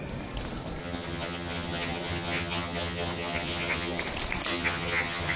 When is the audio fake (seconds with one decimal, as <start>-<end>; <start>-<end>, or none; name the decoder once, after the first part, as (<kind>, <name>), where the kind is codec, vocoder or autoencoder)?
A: 0.8-4.0 (vocoder, HiFi-GAN); 4.5-5.4

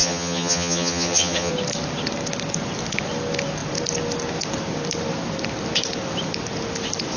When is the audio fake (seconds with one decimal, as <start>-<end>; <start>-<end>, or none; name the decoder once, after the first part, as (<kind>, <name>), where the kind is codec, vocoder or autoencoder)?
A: 0.0-1.5 (vocoder, HiFi-GAN)

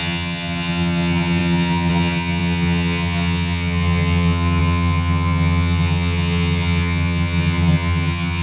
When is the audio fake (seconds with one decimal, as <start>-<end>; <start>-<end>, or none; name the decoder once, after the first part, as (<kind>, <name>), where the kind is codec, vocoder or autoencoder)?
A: 0.0-8.4 (vocoder, HiFi-GAN)

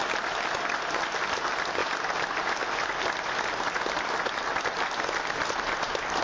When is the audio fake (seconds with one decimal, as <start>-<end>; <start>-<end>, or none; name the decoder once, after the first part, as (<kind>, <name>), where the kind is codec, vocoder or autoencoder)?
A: none

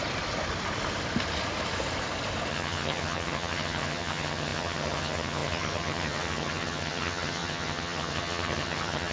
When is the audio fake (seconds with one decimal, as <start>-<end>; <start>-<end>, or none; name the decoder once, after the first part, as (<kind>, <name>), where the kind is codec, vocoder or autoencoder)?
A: 2.5-9.1 (vocoder, HiFi-GAN)

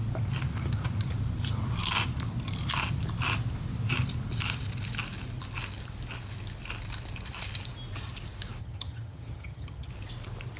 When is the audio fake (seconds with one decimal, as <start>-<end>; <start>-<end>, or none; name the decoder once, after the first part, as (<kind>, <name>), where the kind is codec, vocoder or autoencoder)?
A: 8.6-9.9 (vocoder, HiFi-GAN)

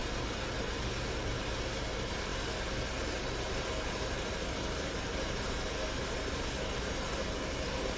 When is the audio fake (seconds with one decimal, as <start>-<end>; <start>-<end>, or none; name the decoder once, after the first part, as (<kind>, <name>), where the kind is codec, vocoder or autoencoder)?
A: none